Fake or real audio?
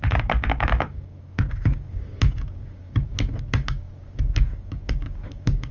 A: fake